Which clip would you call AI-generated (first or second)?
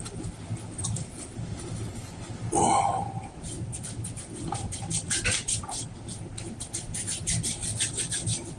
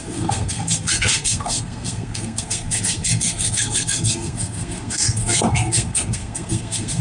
second